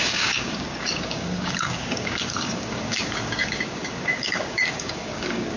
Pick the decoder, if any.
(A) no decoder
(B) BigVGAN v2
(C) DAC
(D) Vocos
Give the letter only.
C